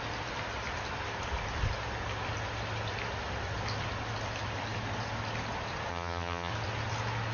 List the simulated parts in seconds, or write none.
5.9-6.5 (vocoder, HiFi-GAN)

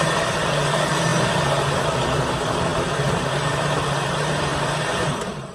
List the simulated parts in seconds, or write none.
0.0-1.1 (vocoder, BigVGAN v2); 2.3-5.5

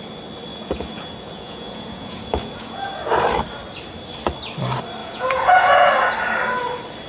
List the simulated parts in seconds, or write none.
0.5-2.9 (vocoder, Vocos); 5.0-5.9

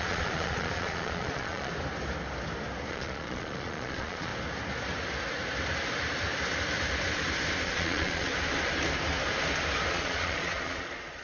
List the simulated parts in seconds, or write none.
0.0-1.7 (vocoder, Vocos); 2.9-4.3; 7.6-8.3; 9.9-11.2

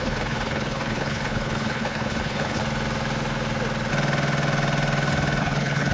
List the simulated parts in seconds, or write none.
0.0-2.6 (codec, HILCodec); 5.4-5.9

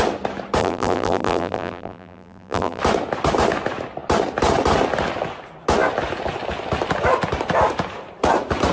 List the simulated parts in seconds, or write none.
0.6-2.8 (vocoder, BigVGAN v2)

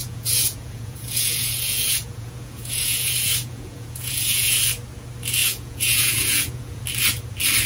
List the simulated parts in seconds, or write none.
0.0-4.6 (vocoder, Vocos); 5.4-6.8

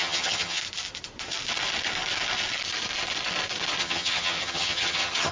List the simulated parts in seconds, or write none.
0.0-0.6 (vocoder, HiFi-GAN); 3.8-5.3